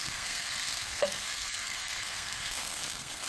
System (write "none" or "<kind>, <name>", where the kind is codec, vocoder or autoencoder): codec, SNAC